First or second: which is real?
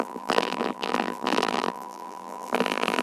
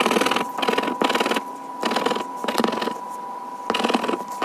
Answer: second